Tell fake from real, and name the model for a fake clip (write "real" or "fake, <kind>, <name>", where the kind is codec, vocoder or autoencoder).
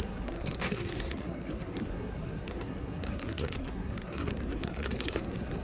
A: fake, codec, SNAC